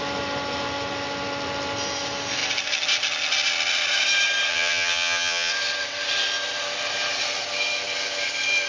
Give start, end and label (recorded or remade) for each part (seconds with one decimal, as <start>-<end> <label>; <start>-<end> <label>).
0.0-4.5 recorded; 4.5-5.5 remade; 5.5-8.7 recorded